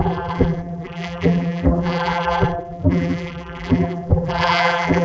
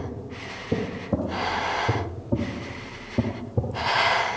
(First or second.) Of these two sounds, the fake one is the first